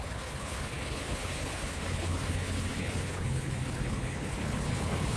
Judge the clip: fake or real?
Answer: fake